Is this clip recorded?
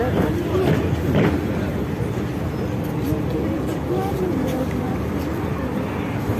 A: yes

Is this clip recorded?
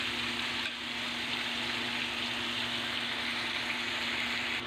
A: no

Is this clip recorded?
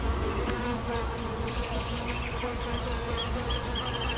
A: no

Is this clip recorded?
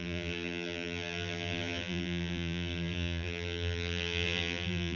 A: no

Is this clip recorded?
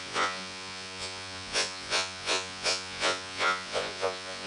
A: no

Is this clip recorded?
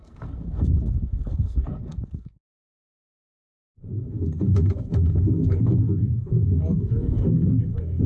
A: no